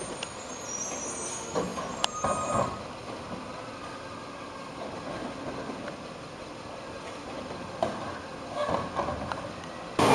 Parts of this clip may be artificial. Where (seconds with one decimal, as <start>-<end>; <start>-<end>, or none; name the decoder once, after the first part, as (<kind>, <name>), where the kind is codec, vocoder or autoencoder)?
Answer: none